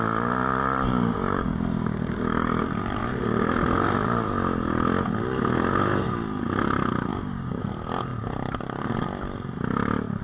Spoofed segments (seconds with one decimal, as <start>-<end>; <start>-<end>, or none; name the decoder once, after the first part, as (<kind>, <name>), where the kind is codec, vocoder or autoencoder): 0.9-2.6 (codec, DAC); 7.1-7.6